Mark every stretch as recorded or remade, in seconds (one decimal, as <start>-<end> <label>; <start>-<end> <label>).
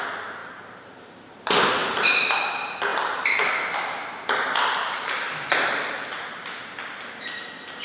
0.0-0.4 recorded; 0.4-1.2 remade; 1.2-1.8 recorded; 1.8-2.4 remade; 2.4-2.9 recorded; 2.9-6.0 remade; 6.0-7.8 recorded